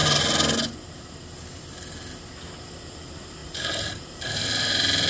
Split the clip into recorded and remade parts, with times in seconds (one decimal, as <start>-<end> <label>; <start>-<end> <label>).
0.0-2.4 recorded; 2.4-5.1 remade